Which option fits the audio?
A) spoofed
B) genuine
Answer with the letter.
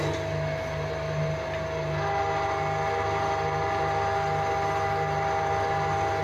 B